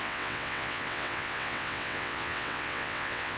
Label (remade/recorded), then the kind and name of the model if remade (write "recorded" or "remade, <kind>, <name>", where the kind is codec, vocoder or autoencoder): remade, vocoder, WaveNeXt